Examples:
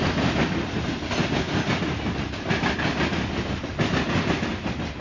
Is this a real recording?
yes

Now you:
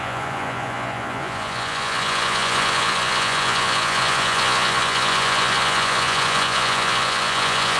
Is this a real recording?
no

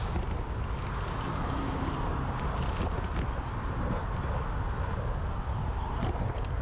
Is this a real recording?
yes